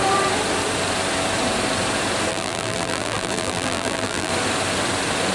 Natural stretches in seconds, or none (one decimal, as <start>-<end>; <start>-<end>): 0.0-2.3; 4.3-5.3